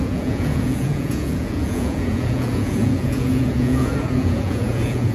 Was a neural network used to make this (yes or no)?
yes